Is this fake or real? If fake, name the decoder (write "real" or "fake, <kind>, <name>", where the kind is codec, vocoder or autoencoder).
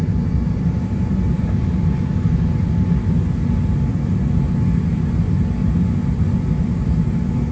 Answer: real